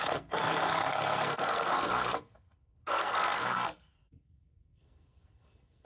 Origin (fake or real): fake